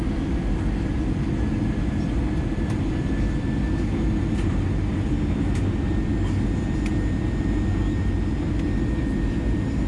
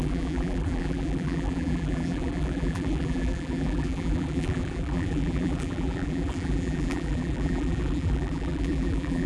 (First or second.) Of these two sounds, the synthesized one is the second